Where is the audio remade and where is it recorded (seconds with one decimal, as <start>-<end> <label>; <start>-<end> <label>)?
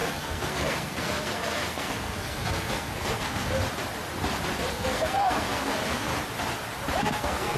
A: 0.0-3.6 remade; 3.6-4.7 recorded; 4.7-6.1 remade; 6.1-7.0 recorded; 7.0-7.6 remade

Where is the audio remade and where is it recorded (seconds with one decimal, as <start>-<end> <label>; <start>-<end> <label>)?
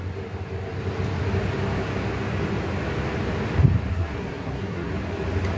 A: 0.0-3.9 recorded; 3.9-4.9 remade; 4.9-5.6 recorded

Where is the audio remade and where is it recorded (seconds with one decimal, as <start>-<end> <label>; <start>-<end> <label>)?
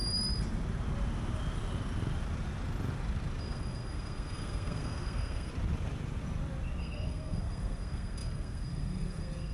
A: 0.0-3.4 recorded; 3.4-5.5 remade; 5.5-6.8 recorded; 6.8-9.5 remade